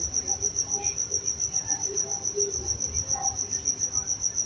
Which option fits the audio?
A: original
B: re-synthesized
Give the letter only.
B